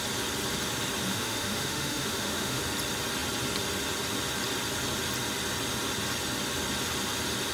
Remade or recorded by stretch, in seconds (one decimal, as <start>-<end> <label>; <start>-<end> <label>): 0.0-1.1 recorded; 1.1-2.6 remade; 2.6-7.5 recorded